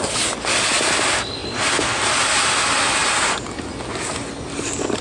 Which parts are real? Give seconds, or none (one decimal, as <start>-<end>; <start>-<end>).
0.0-5.0